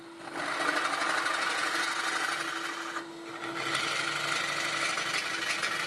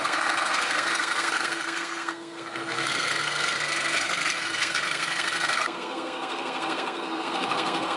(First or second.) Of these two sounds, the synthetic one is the second